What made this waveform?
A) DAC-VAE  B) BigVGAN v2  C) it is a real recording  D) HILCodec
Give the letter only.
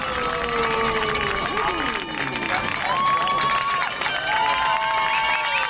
C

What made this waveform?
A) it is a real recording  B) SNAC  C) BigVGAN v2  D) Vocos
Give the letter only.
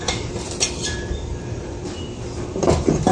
C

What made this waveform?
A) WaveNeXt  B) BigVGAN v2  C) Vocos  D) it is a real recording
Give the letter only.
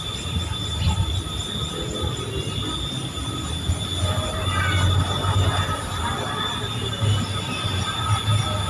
D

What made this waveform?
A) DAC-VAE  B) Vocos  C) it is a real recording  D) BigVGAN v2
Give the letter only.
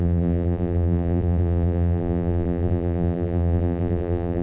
D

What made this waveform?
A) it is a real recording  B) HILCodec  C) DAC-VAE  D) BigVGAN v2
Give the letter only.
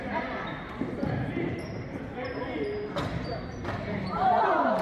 D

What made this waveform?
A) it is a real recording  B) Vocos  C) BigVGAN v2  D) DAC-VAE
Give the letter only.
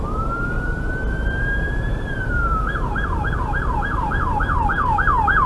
C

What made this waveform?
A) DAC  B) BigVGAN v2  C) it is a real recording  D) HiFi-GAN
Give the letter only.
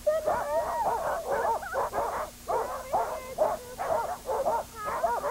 C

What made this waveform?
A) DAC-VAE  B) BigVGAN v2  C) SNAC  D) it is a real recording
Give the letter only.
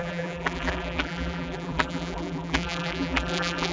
B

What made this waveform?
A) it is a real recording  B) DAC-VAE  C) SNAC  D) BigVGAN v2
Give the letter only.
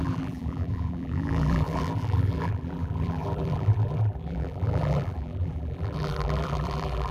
D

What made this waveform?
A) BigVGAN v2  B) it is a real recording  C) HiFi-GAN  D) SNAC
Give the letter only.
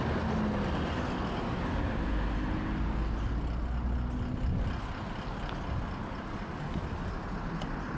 B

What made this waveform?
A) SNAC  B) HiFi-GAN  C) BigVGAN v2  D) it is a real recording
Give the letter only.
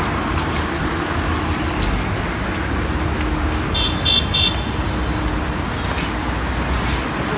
D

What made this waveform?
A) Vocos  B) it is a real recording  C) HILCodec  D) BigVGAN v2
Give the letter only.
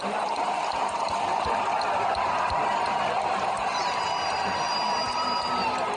D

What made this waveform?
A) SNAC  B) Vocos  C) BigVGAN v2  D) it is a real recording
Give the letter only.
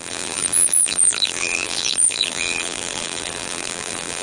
C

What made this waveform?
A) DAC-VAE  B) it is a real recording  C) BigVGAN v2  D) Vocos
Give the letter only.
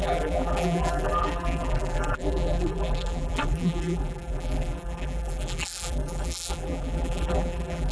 C